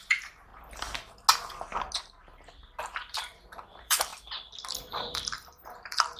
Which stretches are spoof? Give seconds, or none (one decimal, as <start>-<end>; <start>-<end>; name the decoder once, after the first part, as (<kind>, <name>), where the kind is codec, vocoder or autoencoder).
0.0-0.5 (vocoder, BigVGAN v2); 2.8-4.1; 4.8-6.2